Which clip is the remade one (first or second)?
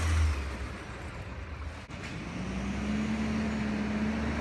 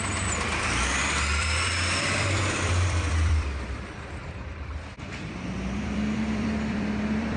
second